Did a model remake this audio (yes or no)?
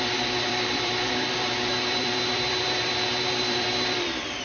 yes